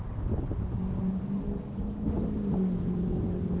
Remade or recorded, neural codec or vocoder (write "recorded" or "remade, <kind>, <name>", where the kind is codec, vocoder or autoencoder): recorded